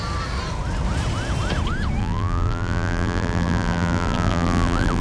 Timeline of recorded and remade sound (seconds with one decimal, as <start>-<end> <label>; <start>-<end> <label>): 0.0-2.0 recorded; 2.0-5.0 remade